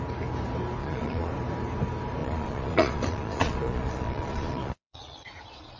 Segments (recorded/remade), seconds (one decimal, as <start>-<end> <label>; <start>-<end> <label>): 0.0-0.8 recorded; 0.8-1.3 remade; 1.3-2.2 recorded; 2.2-5.8 remade